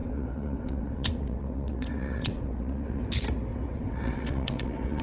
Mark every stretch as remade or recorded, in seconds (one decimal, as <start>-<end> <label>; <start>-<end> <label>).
0.0-3.0 remade; 3.0-3.5 recorded; 3.5-5.0 remade